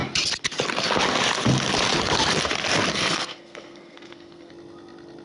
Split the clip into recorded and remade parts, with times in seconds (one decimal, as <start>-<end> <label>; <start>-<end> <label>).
0.0-2.9 recorded; 2.9-4.5 remade; 4.5-5.2 recorded